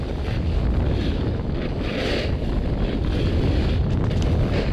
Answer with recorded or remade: recorded